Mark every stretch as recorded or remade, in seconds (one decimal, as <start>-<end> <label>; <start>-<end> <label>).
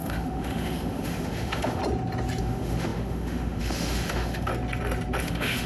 0.0-1.8 remade; 1.8-2.4 recorded; 2.4-4.5 remade; 4.5-5.2 recorded; 5.2-5.7 remade